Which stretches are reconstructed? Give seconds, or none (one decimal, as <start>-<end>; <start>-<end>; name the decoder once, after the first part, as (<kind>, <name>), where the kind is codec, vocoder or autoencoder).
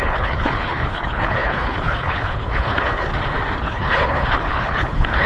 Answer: 0.0-3.1 (codec, HILCodec); 3.6-5.3